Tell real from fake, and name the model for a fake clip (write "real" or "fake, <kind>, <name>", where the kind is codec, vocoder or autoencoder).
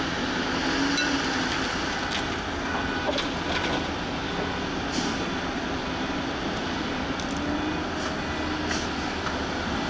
real